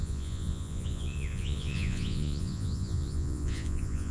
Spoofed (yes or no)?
yes